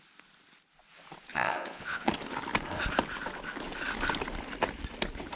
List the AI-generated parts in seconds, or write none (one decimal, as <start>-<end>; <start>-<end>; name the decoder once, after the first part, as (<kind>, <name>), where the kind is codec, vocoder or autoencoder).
1.3-2.1 (vocoder, Vocos)